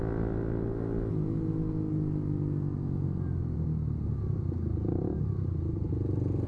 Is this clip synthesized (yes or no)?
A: no